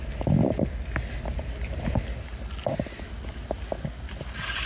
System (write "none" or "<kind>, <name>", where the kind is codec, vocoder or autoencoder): none